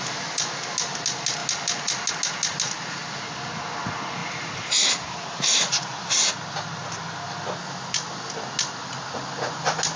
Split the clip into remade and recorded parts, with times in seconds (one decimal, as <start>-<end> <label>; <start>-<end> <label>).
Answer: 0.0-4.2 recorded; 4.2-6.3 remade; 6.3-10.0 recorded